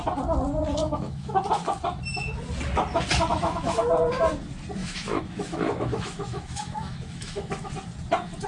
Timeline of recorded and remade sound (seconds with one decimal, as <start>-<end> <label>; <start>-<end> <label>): 0.0-0.8 recorded; 0.8-1.4 remade; 1.4-3.3 recorded; 3.3-3.8 remade; 3.8-4.8 recorded; 4.8-7.7 remade; 7.7-8.5 recorded